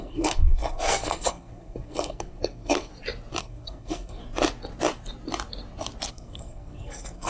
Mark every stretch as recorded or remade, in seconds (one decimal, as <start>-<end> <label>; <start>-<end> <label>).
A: 0.0-2.9 remade; 2.9-3.4 recorded; 3.4-4.2 remade; 4.2-6.1 recorded; 6.1-7.3 remade